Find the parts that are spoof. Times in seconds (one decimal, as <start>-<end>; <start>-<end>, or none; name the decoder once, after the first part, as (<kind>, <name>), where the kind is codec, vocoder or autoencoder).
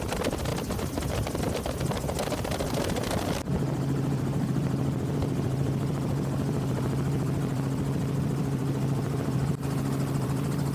0.0-0.5 (vocoder, BigVGAN v2); 1.4-10.7